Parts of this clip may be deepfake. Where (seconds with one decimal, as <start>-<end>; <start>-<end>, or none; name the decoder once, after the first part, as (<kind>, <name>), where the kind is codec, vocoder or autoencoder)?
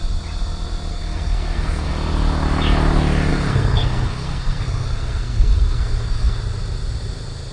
0.9-1.9 (codec, SNAC); 3.3-6.4